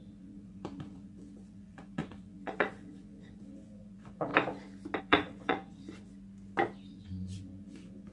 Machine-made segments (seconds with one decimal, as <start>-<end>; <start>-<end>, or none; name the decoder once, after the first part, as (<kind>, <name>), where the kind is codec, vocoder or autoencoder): 0.0-4.3 (vocoder, Vocos); 5.0-6.1; 6.9-8.1